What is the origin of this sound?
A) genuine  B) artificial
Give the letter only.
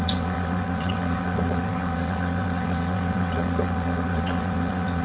B